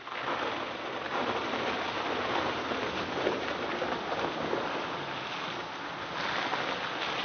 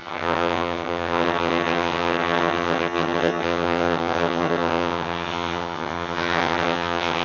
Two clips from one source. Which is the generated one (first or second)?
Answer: second